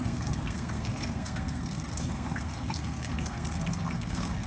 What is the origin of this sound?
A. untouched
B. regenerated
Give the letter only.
B